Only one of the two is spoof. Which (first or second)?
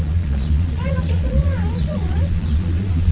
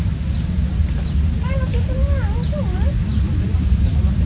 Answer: first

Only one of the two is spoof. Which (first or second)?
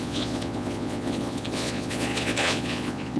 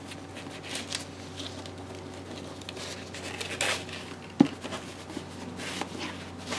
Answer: first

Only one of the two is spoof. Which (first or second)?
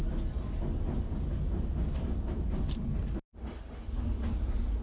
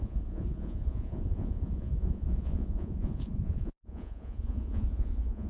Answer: second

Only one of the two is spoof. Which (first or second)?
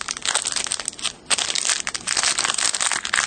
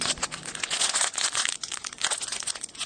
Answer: second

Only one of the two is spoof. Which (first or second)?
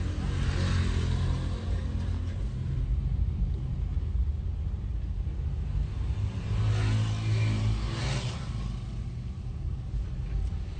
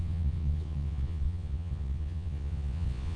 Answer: second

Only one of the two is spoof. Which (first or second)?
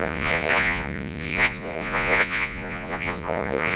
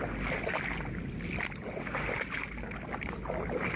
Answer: first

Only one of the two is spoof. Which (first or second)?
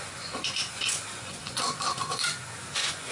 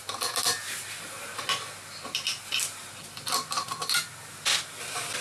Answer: first